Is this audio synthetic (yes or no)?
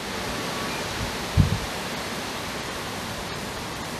no